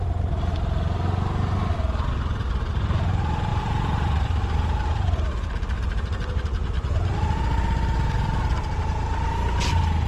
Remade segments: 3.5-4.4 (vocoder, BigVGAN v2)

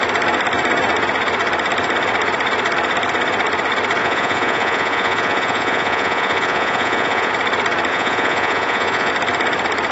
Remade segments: 4.0-7.3 (vocoder, Vocos); 7.9-9.1

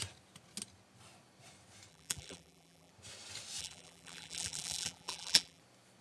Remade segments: 1.9-2.9 (vocoder, BigVGAN v2); 3.6-5.6